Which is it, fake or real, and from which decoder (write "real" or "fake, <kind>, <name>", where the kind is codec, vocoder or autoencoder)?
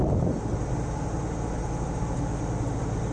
real